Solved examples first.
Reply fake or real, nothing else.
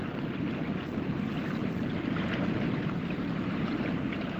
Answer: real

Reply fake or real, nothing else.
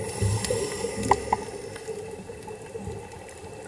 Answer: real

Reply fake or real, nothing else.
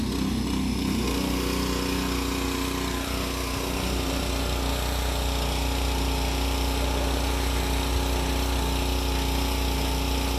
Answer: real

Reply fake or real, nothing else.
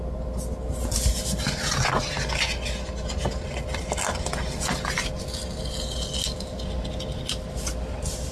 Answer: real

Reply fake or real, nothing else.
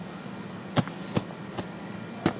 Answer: real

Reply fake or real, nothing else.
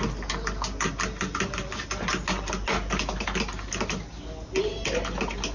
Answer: real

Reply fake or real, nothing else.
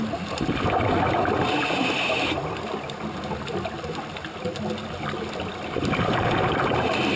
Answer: real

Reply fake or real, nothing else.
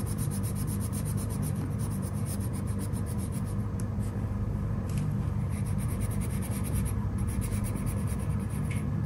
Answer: fake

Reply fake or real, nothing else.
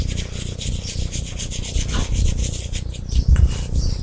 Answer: real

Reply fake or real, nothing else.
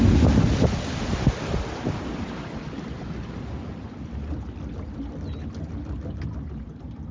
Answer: real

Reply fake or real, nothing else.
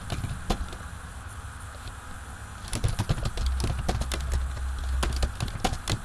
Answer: real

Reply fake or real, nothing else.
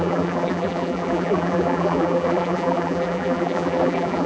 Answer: fake